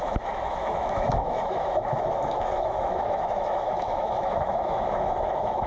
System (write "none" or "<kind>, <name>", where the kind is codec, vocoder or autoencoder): autoencoder, DAC-VAE